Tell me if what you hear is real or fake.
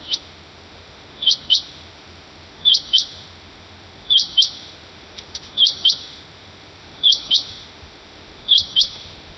fake